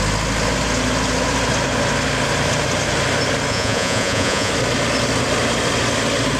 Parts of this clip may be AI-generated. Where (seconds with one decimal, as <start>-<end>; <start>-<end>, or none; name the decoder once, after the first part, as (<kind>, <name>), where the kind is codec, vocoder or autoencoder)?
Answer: 3.5-4.5 (vocoder, Vocos)